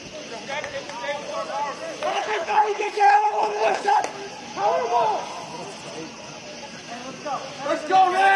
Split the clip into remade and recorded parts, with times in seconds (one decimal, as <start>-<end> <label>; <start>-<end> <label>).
0.0-2.1 recorded; 2.1-4.0 remade; 4.0-8.4 recorded